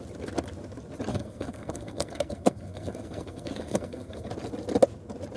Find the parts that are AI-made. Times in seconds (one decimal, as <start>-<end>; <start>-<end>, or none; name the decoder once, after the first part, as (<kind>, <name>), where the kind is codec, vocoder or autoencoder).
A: 1.1-4.3 (codec, SNAC)